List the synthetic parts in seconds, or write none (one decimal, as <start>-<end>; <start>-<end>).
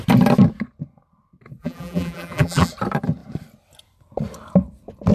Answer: 1.6-2.7